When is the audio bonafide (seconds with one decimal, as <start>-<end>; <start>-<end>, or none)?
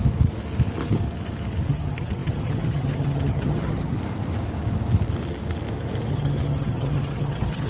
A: 0.0-1.7; 4.0-6.1